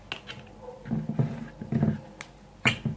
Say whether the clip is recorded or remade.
recorded